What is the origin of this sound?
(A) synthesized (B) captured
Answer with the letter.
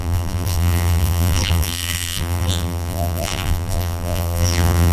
A